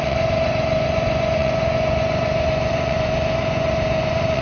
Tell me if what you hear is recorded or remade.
remade